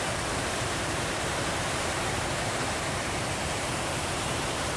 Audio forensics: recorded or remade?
remade